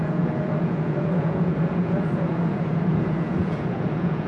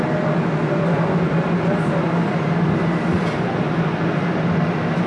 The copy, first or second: first